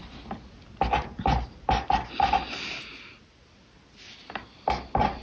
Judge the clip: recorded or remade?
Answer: recorded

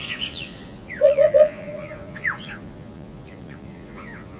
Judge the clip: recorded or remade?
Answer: remade